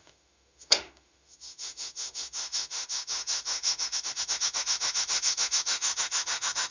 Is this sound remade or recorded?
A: remade